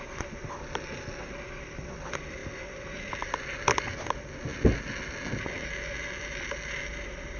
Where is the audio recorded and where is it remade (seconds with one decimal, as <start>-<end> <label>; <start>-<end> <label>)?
0.0-7.4 recorded